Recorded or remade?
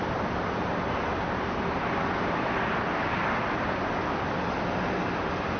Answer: recorded